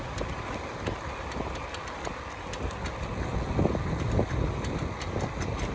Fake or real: real